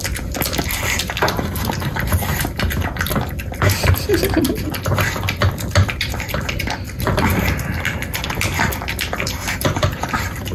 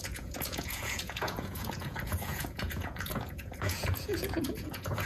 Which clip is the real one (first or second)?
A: first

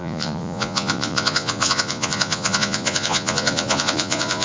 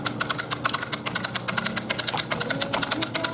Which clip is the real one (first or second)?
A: second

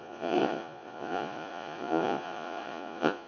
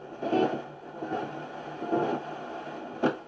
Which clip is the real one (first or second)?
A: second